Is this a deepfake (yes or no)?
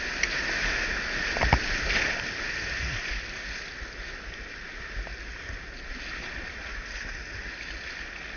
no